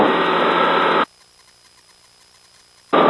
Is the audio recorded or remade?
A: recorded